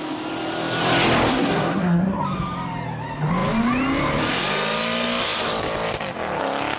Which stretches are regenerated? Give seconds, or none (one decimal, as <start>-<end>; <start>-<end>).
1.3-2.2